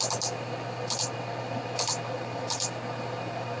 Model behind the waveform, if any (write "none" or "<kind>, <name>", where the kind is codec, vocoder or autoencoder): none